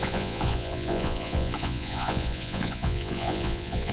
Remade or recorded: remade